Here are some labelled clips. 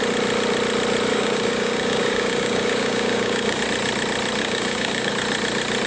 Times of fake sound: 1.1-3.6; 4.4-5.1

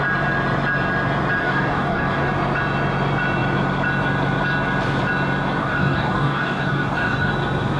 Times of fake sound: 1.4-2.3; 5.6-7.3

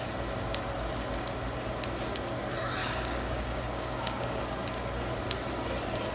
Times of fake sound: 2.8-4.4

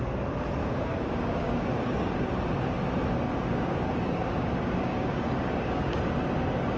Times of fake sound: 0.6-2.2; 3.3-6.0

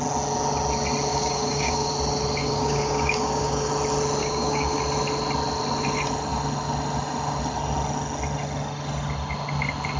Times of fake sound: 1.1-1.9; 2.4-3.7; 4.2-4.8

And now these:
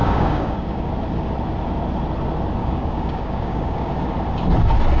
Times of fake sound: 0.0-0.9; 2.6-3.9

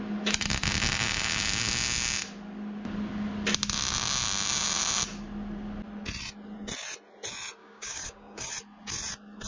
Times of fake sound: 7.6-8.5

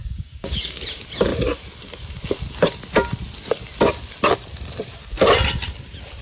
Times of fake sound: 0.0-0.8